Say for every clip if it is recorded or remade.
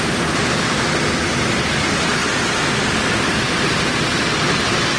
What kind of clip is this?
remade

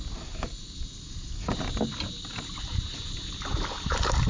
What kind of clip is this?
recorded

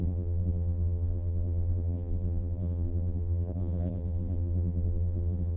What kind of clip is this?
remade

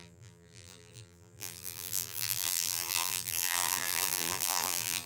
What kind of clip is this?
remade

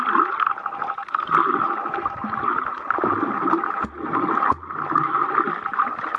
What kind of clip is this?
recorded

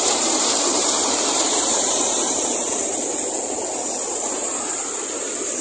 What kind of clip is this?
remade